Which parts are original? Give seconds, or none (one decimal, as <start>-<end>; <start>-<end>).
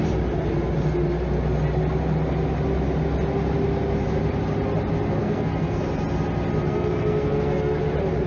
0.0-5.2; 5.8-6.6; 7.8-8.3